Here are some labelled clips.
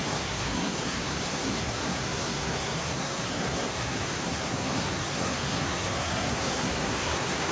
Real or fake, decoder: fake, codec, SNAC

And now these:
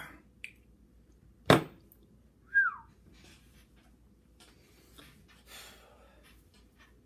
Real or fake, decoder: real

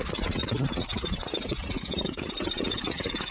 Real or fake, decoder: fake, vocoder, Vocos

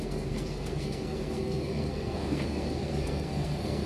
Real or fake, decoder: fake, codec, SNAC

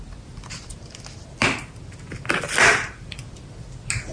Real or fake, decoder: real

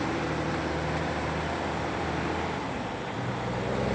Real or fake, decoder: fake, vocoder, BigVGAN v2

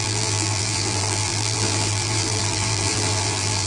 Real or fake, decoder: fake, vocoder, BigVGAN v2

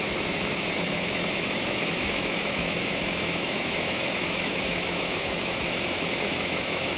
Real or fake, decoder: fake, autoencoder, DAC-VAE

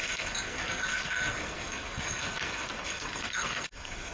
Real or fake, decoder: fake, codec, SNAC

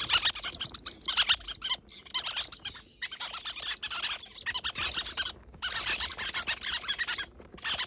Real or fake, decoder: real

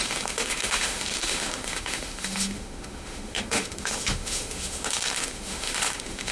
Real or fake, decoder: fake, autoencoder, DAC-VAE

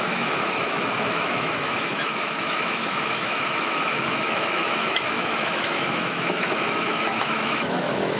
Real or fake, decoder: fake, autoencoder, DAC-VAE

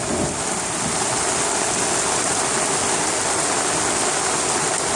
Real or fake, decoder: real